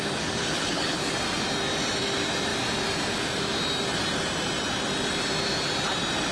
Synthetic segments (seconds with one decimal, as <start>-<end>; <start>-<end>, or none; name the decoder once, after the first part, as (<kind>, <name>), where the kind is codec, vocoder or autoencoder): 0.4-1.1 (codec, HILCodec)